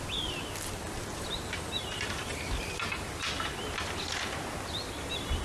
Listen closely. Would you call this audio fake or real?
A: real